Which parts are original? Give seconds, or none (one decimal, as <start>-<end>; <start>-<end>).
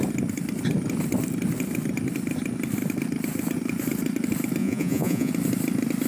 0.0-4.6; 5.3-6.1